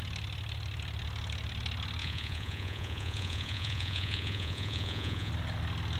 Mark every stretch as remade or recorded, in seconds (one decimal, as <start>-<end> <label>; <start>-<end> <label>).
0.0-2.0 recorded; 2.0-5.3 remade; 5.3-6.0 recorded